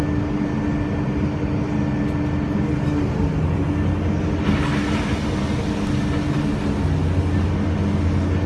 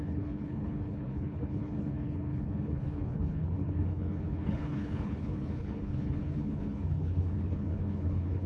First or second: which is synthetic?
second